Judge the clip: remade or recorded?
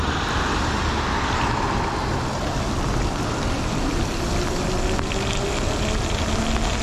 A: recorded